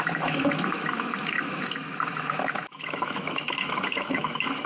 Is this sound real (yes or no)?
no